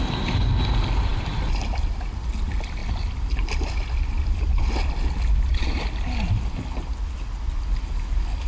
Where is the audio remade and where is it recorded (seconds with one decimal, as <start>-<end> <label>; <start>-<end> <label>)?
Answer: 0.0-2.8 recorded; 2.8-4.3 remade; 4.3-8.5 recorded